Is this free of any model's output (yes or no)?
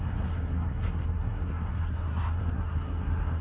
no